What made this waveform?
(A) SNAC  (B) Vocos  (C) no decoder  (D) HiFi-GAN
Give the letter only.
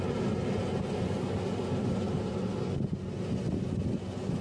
C